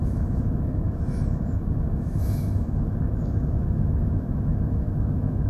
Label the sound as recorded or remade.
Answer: remade